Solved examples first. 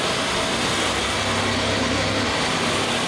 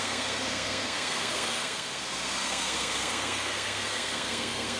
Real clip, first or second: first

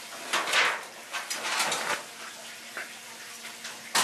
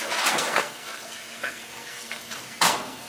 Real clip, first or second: first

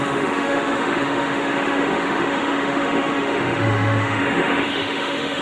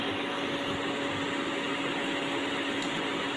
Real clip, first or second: second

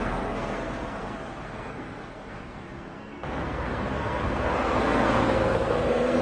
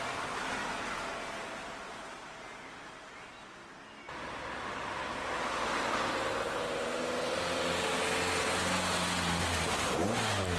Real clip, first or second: second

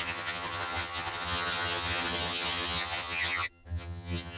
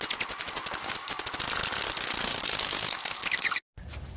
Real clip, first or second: second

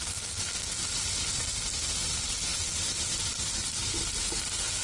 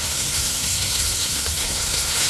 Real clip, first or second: first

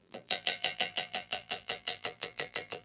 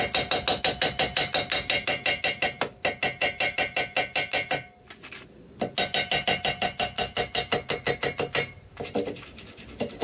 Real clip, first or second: second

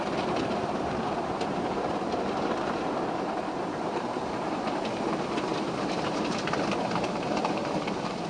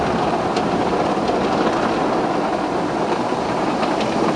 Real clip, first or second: second